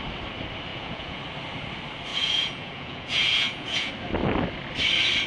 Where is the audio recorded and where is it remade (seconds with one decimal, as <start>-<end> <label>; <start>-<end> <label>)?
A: 0.0-0.7 recorded; 0.7-1.2 remade; 1.2-2.1 recorded; 2.1-3.9 remade; 3.9-5.3 recorded